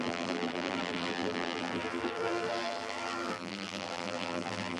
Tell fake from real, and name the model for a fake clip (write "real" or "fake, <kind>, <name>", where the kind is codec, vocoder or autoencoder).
fake, vocoder, BigVGAN v2